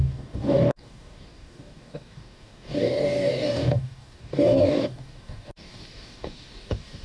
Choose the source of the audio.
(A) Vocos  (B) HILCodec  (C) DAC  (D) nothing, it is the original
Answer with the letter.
C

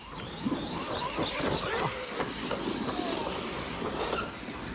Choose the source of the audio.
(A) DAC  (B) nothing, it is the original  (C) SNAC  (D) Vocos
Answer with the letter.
B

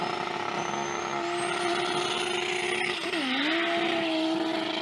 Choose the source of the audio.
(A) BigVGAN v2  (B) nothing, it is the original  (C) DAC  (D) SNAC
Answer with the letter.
B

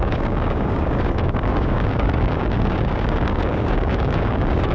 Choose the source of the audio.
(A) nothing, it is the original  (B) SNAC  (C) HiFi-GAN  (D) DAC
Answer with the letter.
D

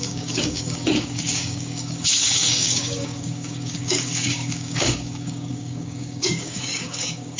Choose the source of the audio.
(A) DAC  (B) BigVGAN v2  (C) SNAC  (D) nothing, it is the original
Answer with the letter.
A